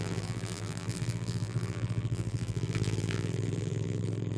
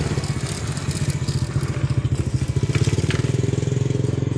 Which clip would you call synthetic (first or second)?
first